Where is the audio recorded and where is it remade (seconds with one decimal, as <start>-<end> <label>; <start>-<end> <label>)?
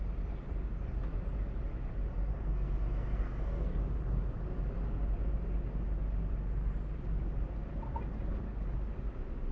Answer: 0.0-2.3 recorded; 2.3-3.8 remade; 3.8-9.5 recorded